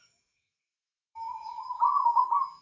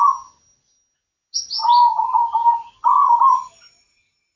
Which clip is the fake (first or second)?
first